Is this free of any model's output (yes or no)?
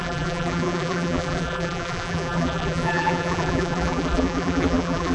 no